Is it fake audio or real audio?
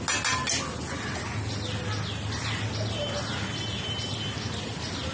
real